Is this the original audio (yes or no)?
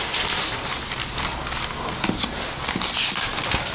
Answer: yes